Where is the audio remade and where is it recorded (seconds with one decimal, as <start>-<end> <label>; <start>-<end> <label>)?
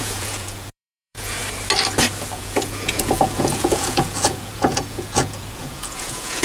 0.0-1.4 remade; 1.4-2.3 recorded; 2.3-6.4 remade